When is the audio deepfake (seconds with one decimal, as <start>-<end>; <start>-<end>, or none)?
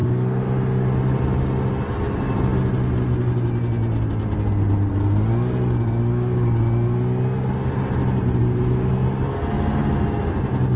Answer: 6.0-6.6; 8.4-8.9